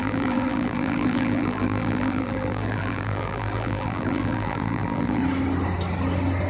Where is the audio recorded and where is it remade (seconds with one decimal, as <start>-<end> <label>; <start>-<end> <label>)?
0.0-5.2 remade; 5.2-6.5 recorded